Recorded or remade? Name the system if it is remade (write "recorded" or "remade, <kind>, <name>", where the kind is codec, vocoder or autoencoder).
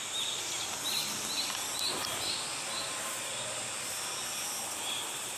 recorded